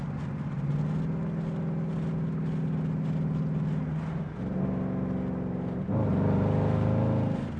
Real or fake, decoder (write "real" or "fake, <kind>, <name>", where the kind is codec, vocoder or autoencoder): real